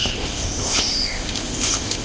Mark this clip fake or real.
fake